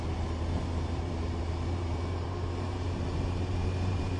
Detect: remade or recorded remade